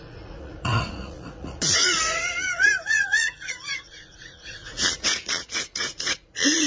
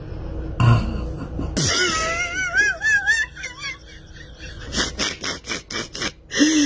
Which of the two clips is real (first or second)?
second